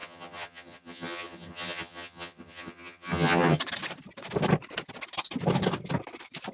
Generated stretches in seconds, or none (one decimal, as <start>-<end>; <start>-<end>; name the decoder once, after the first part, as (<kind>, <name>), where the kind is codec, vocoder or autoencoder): 0.0-3.6 (vocoder, HiFi-GAN)

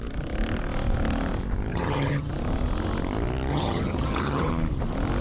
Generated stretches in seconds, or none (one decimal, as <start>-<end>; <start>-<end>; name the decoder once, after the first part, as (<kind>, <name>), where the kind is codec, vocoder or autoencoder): 1.7-2.3 (vocoder, HiFi-GAN); 3.5-4.5

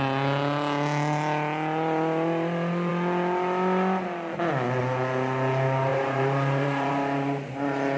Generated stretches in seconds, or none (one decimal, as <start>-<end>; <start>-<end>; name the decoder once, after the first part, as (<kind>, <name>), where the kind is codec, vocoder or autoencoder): 5.9-6.9 (vocoder, BigVGAN v2)

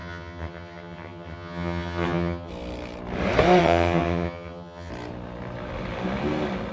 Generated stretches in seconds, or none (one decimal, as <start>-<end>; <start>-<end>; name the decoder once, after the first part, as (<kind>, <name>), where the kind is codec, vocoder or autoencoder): 0.0-2.5 (vocoder, HiFi-GAN); 3.6-4.9

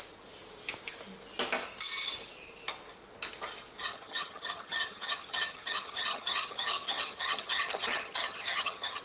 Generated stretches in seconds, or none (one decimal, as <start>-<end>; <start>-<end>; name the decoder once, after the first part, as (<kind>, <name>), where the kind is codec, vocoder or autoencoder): 3.9-9.0 (vocoder, HiFi-GAN)

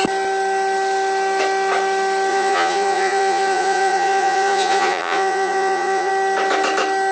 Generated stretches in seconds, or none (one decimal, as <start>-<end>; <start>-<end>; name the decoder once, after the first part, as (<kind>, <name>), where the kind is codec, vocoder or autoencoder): 2.3-6.1 (vocoder, Vocos)

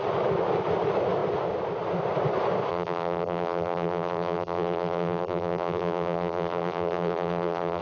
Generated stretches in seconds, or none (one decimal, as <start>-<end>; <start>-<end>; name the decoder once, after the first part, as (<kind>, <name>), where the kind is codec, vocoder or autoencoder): 2.7-7.8 (vocoder, BigVGAN v2)